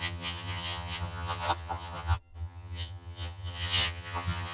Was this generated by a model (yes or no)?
yes